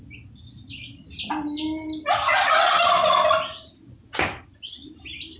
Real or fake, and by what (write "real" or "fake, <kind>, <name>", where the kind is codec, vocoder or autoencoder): real